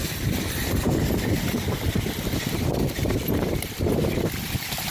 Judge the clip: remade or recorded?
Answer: remade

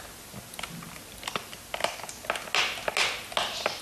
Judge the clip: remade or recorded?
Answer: recorded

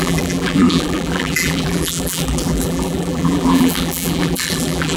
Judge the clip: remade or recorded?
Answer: remade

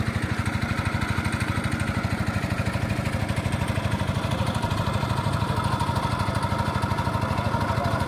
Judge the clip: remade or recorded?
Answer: recorded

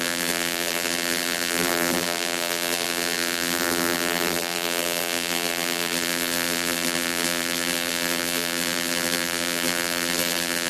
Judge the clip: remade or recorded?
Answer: remade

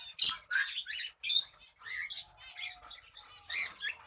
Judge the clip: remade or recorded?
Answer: recorded